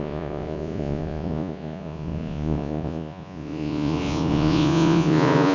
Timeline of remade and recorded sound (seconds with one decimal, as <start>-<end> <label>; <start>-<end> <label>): 0.0-5.5 remade